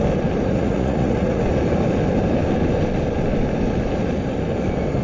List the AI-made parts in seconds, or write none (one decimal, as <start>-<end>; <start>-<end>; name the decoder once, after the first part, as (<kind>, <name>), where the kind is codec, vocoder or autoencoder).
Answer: 0.4-1.4 (vocoder, Vocos)